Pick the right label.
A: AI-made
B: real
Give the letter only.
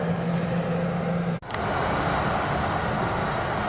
B